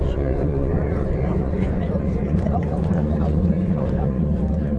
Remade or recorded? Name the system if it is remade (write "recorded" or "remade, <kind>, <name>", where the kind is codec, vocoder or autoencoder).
remade, vocoder, Vocos